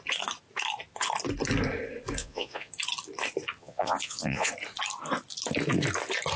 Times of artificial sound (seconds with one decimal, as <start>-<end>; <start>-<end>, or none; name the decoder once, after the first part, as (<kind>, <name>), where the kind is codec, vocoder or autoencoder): 2.2-2.7 (vocoder, Vocos); 3.6-4.5